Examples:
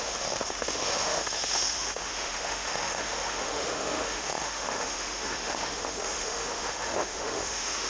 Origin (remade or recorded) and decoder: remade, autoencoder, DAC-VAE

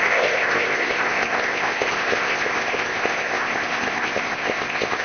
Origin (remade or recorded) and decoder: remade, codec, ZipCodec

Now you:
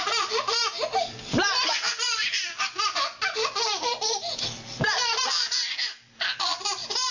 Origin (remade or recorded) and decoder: remade, vocoder, BigVGAN v2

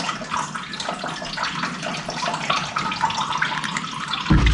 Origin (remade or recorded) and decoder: recorded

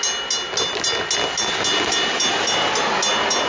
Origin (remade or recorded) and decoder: recorded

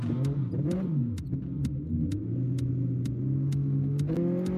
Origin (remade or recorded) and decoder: recorded